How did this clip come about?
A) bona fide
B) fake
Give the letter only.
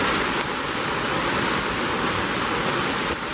A